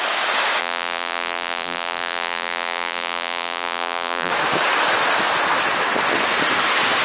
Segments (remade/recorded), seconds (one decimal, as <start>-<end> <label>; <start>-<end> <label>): 0.0-0.6 recorded; 0.6-4.3 remade; 4.3-7.0 recorded